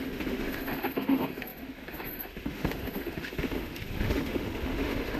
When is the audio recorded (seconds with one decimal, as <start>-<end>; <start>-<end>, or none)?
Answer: none